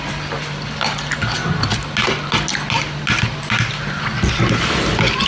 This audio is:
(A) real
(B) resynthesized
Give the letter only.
A